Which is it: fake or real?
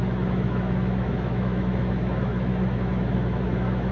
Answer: fake